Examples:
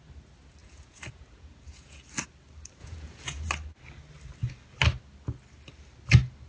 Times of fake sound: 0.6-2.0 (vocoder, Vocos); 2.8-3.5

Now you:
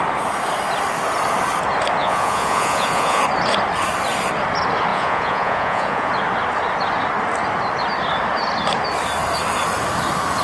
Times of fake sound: 2.0-3.2 (vocoder, Vocos); 4.9-6.1

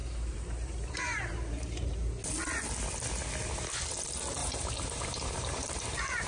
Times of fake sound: 0.0-1.8 (vocoder, BigVGAN v2); 4.4-6.3

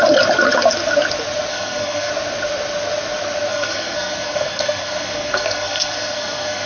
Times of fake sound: 1.5-2.1 (codec, SNAC); 3.5-6.7